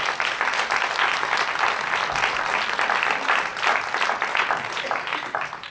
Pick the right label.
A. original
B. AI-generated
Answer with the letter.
A